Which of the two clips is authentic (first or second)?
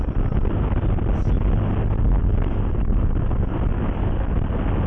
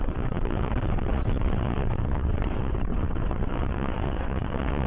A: first